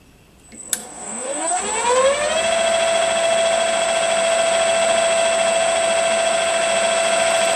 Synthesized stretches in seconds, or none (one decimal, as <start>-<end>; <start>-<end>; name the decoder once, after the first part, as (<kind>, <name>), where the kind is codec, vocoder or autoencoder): 0.8-1.6 (codec, DAC)